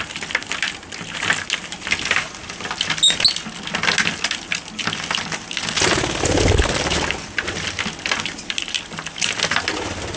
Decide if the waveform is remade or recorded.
recorded